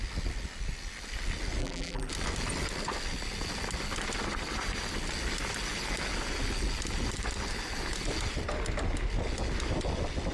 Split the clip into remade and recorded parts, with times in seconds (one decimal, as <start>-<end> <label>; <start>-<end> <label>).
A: 0.0-1.6 recorded; 1.6-2.1 remade; 2.1-10.3 recorded